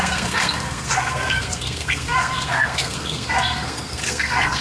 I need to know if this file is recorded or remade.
remade